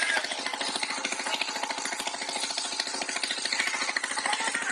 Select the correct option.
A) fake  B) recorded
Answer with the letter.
B